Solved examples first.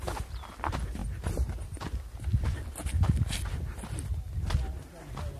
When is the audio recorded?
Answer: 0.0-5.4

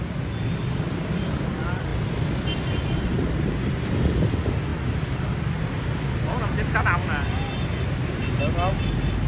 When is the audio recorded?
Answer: 0.0-9.3

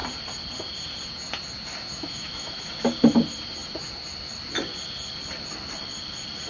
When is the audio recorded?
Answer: 0.0-1.9; 2.7-6.5

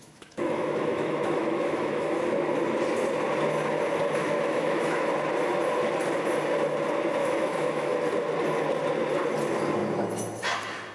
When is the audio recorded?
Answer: 2.2-4.2; 5.1-7.2; 8.0-10.9

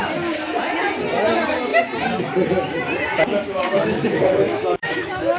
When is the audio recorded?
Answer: 0.0-3.3

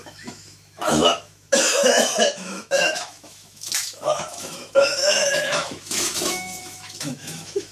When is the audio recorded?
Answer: none

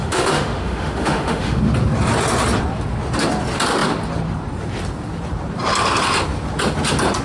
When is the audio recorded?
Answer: 1.6-7.2